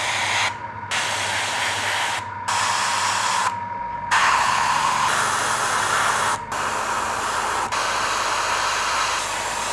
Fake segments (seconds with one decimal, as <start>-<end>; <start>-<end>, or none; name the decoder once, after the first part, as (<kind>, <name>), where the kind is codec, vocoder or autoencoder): 4.2-4.7 (codec, HILCodec)